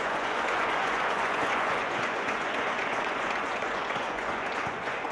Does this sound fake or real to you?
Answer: fake